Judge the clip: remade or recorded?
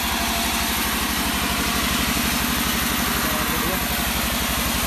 recorded